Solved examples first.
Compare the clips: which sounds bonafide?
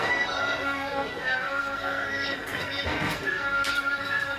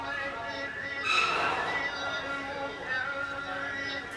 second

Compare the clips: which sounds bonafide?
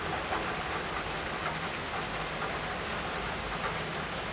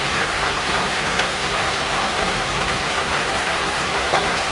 first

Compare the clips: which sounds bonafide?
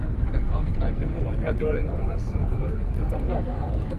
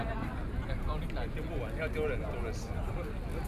second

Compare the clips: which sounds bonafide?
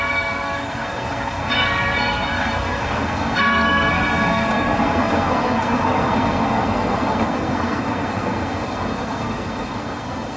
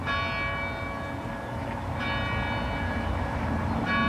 second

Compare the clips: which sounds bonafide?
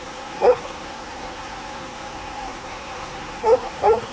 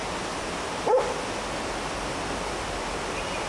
second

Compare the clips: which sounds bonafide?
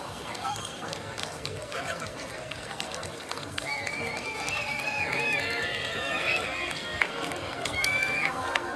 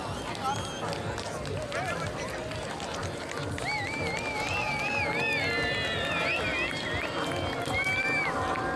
second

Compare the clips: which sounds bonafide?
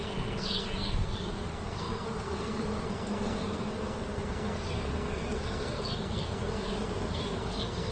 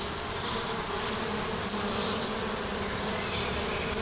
second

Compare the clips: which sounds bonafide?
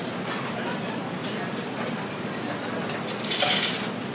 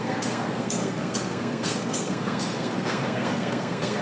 first